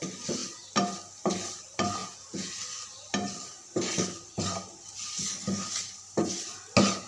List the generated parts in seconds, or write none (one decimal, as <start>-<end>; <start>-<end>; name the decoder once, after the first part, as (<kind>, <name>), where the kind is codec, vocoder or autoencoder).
2.0-2.5 (vocoder, Vocos)